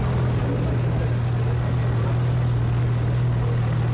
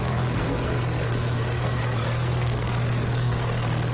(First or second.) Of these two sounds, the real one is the first